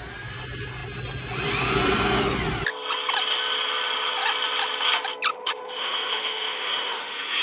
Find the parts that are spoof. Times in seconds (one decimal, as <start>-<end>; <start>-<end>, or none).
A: 5.3-7.4